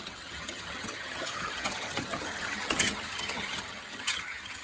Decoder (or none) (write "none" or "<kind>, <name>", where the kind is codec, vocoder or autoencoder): vocoder, HiFi-GAN